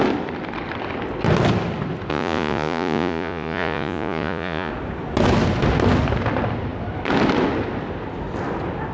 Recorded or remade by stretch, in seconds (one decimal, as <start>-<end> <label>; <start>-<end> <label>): 0.0-2.1 recorded; 2.1-4.7 remade; 4.7-8.9 recorded